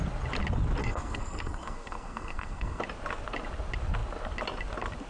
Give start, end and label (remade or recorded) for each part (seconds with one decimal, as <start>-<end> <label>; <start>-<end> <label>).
0.0-0.8 recorded; 0.8-2.8 remade; 2.8-5.1 recorded